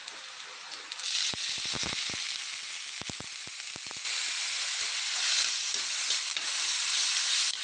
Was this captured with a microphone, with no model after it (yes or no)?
yes